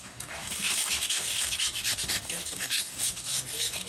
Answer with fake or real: fake